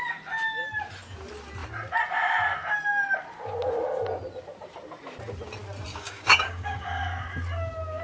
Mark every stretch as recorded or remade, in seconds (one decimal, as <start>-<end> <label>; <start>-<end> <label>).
0.0-5.9 recorded; 5.9-7.0 remade; 7.0-8.0 recorded